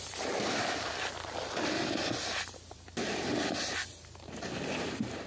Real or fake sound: fake